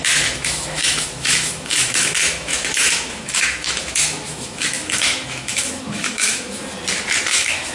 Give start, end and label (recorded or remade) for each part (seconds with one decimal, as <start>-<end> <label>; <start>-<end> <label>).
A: 0.0-6.6 remade; 6.6-7.3 recorded; 7.3-7.7 remade